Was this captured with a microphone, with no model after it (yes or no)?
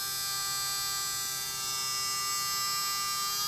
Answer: yes